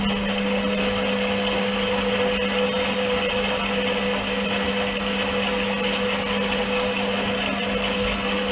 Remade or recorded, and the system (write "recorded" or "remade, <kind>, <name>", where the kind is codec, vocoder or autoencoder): recorded